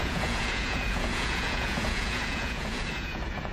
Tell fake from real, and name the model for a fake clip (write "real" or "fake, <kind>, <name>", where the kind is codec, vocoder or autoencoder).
fake, vocoder, Vocos